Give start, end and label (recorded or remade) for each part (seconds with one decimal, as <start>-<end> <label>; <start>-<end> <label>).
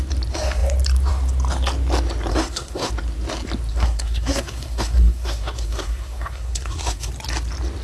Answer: 0.0-2.3 recorded; 2.3-2.9 remade; 2.9-3.7 recorded; 3.7-7.1 remade; 7.1-7.8 recorded